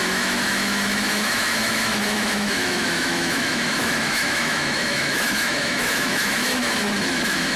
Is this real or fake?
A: fake